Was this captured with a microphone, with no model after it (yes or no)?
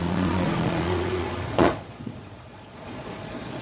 no